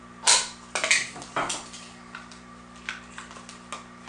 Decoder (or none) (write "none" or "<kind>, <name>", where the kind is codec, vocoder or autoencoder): none